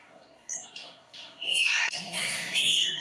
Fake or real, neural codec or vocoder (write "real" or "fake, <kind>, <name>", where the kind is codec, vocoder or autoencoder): fake, codec, SNAC